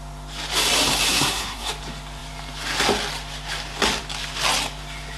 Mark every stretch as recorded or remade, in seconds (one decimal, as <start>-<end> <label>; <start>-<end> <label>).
0.0-1.1 recorded; 1.1-1.7 remade; 1.7-5.2 recorded

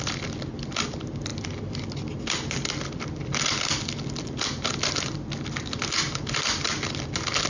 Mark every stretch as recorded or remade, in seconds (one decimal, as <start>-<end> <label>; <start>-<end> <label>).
0.0-7.5 recorded

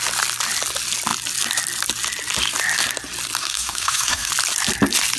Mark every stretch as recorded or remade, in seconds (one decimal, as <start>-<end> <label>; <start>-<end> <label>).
0.0-3.4 recorded; 3.4-4.3 remade; 4.3-5.2 recorded

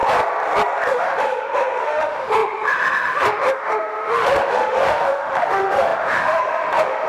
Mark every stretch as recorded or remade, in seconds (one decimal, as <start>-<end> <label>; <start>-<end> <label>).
0.0-0.9 recorded; 0.9-7.1 remade

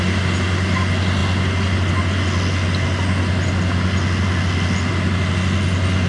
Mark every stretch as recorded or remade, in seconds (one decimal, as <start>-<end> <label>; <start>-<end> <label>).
0.0-6.1 recorded